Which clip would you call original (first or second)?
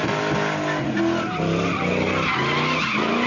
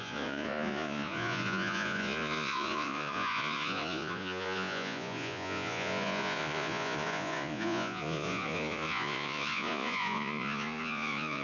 first